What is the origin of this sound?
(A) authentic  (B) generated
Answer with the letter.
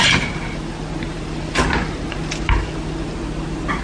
A